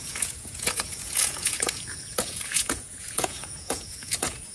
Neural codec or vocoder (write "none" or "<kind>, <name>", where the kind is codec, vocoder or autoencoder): vocoder, Vocos